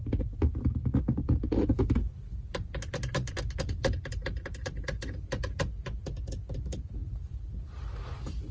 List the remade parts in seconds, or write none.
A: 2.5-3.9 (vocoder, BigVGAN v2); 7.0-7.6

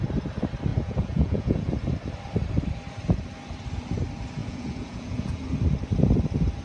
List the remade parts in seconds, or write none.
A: 0.7-1.7 (vocoder, Vocos); 4.4-5.4

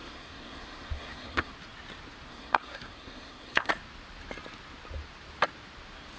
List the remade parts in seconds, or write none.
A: 0.0-1.5 (codec, SNAC); 2.3-3.7

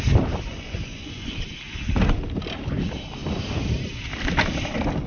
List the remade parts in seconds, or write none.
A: 0.5-1.3 (vocoder, Vocos)

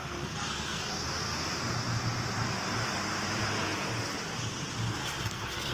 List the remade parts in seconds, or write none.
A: 0.0-0.9 (codec, SNAC); 5.0-5.7

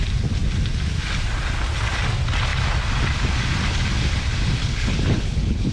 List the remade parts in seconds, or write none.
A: 4.6-5.7 (codec, HILCodec)

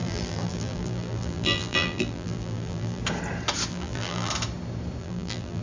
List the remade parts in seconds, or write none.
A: 0.0-3.0 (vocoder, BigVGAN v2); 3.7-4.3; 5.0-5.6